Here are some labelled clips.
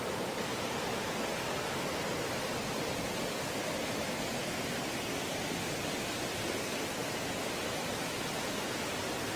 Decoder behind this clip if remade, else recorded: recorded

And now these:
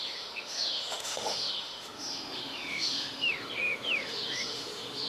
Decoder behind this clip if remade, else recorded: remade, autoencoder, DAC-VAE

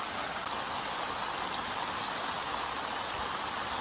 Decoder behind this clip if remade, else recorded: recorded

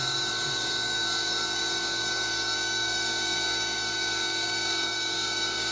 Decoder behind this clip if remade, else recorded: remade, codec, DAC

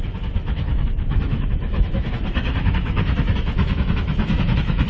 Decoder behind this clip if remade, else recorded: remade, autoencoder, DAC-VAE